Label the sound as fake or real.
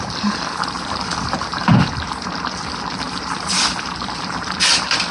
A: fake